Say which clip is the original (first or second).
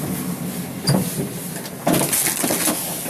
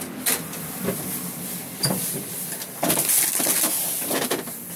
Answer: first